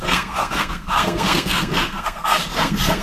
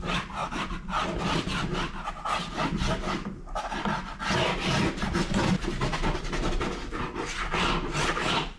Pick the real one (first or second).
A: second